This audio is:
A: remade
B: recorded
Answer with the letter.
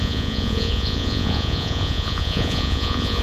A